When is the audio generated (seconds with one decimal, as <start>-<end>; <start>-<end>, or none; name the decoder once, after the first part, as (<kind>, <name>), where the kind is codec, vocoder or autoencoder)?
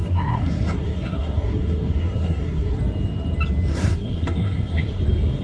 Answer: 0.0-2.8 (codec, SNAC); 3.7-5.0